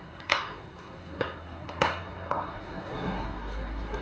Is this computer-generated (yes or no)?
yes